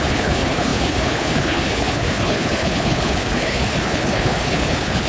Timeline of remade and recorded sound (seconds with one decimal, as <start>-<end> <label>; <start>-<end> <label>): 0.0-5.1 remade